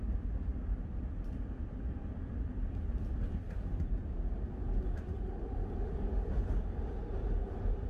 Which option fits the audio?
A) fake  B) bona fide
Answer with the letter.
A